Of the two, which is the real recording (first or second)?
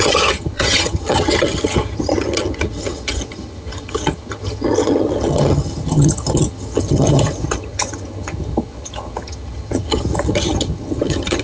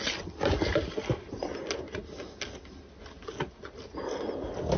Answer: second